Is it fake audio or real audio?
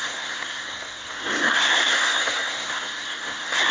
fake